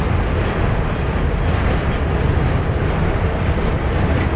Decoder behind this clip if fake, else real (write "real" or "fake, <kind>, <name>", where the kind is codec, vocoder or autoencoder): real